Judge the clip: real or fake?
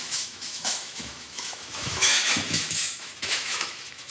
fake